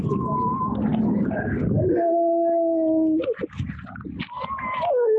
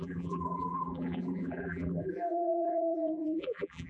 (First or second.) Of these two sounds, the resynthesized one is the second